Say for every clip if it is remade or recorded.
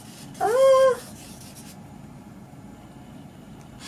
recorded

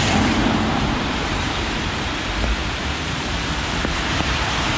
remade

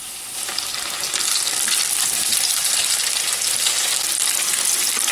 remade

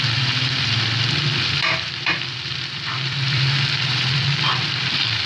remade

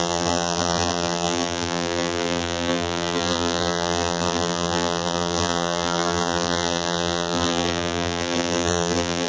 remade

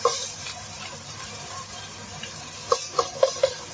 remade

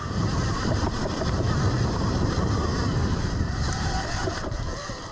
remade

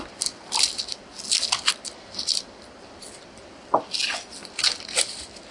recorded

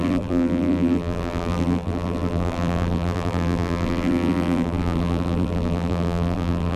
remade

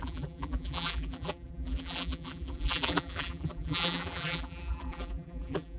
remade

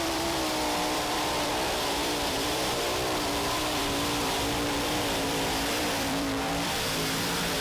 remade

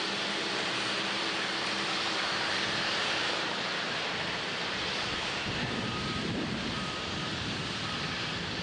remade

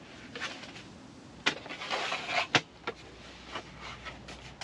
recorded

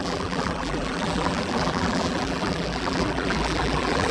remade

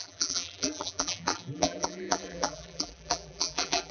remade